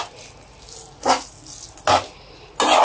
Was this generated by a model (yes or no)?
no